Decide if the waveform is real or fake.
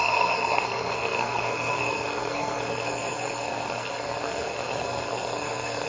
fake